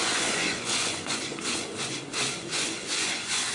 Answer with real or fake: fake